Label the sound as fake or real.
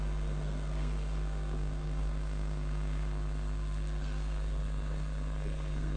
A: fake